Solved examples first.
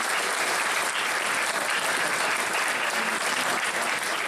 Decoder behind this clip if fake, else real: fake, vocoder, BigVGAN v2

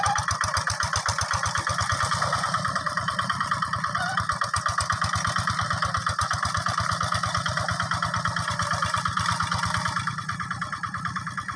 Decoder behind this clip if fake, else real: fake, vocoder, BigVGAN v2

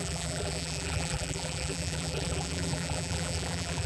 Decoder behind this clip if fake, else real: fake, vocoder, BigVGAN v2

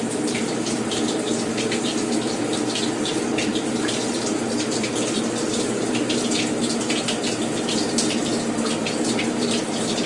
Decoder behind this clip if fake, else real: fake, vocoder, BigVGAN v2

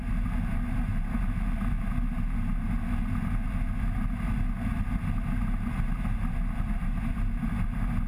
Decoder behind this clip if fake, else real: real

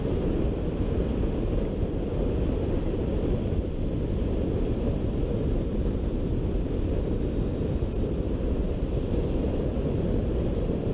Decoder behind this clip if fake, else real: real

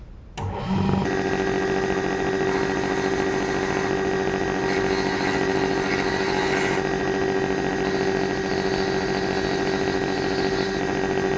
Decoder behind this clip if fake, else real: real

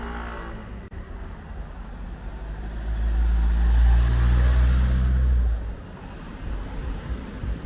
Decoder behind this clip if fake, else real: real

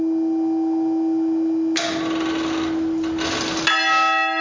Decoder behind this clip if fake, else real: real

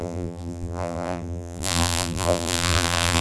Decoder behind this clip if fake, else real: fake, vocoder, BigVGAN v2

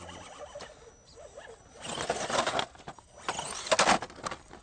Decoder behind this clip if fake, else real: real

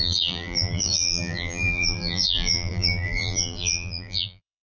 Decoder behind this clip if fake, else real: fake, vocoder, BigVGAN v2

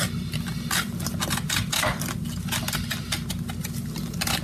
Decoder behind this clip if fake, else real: real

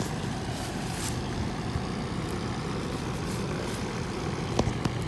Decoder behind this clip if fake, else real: real